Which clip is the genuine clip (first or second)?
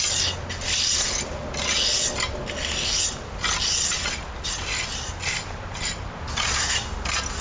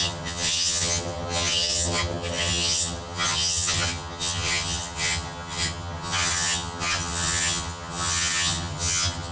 first